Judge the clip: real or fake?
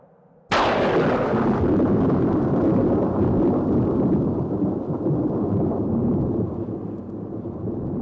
real